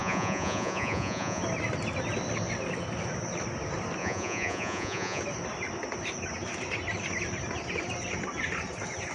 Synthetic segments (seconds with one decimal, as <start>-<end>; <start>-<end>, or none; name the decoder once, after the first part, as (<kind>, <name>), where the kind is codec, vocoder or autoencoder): 0.0-1.4 (vocoder, Vocos); 4.0-5.2